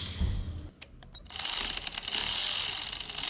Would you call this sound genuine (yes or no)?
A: yes